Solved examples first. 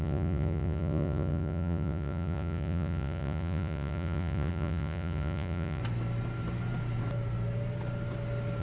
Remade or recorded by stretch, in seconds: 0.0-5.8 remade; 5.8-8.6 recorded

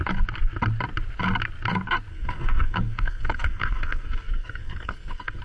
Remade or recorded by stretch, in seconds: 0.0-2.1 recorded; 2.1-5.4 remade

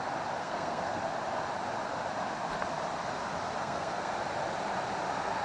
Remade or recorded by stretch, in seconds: 0.0-0.4 recorded; 0.4-1.0 remade; 1.0-3.6 recorded; 3.6-4.1 remade; 4.1-5.4 recorded

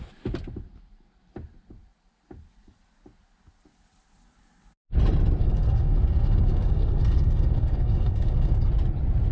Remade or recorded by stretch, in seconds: 0.0-5.4 recorded; 5.4-8.7 remade; 8.7-9.3 recorded

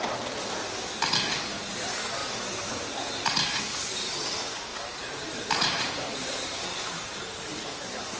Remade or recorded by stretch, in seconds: 0.0-2.2 recorded; 2.2-3.6 remade; 3.6-4.7 recorded; 4.7-7.7 remade; 7.7-8.2 recorded